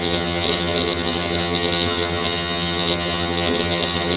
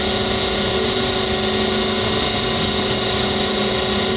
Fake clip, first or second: first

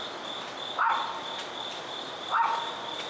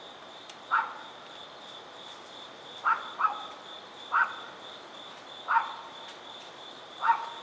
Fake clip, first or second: second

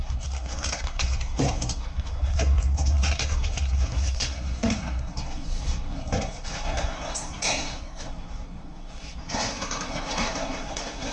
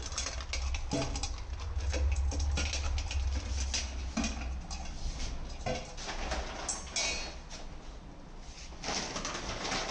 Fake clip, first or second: first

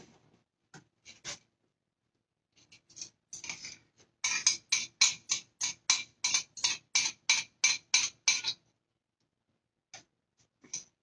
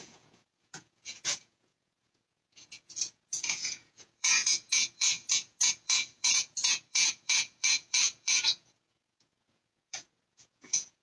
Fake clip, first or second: second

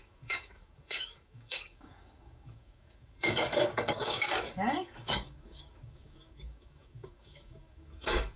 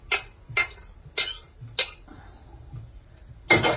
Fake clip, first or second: first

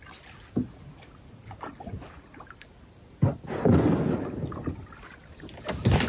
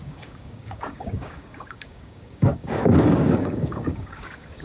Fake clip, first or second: second